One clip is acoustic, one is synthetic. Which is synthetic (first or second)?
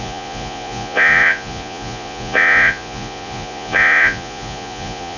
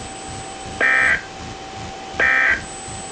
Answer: first